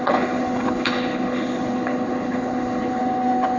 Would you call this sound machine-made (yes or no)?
yes